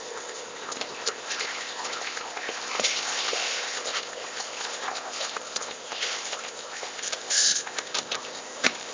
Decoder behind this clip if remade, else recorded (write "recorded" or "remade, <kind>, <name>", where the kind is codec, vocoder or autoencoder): remade, codec, ZipCodec